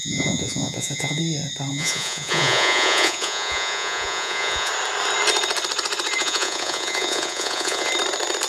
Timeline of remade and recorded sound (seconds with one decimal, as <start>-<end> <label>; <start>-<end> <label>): 0.0-1.2 remade; 1.2-1.7 recorded; 1.7-4.7 remade; 4.7-6.2 recorded; 6.2-7.9 remade; 7.9-8.5 recorded